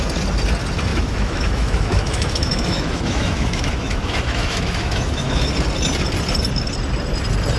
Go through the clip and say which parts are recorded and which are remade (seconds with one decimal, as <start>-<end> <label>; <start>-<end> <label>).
0.0-0.9 recorded; 0.9-5.5 remade; 5.5-7.6 recorded